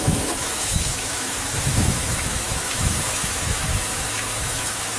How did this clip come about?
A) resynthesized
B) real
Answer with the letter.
A